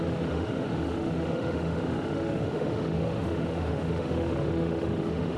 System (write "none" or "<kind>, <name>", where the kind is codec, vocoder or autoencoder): autoencoder, DAC-VAE